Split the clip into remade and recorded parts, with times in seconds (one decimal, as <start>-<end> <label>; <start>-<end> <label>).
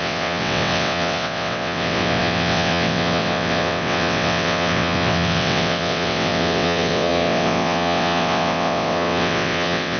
0.0-10.0 remade